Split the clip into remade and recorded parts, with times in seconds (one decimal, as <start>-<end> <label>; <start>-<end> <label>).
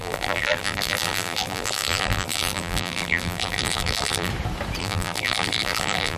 0.0-4.3 remade; 4.3-4.8 recorded; 4.8-6.2 remade